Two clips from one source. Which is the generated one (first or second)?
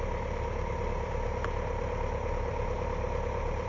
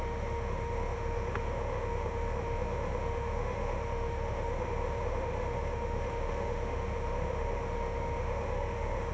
second